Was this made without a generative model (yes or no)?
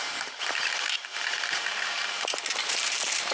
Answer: no